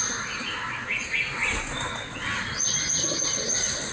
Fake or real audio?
real